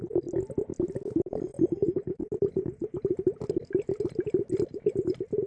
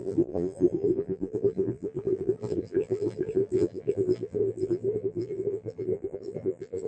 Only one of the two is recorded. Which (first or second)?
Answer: first